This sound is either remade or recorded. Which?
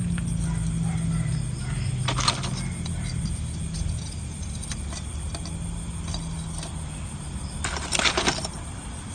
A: recorded